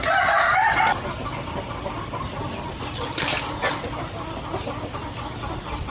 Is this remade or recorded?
recorded